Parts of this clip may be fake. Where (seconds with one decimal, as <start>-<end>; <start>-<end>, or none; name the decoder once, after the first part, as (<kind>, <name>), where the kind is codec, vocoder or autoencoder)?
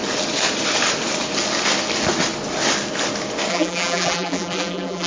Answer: 3.5-5.1 (vocoder, BigVGAN v2)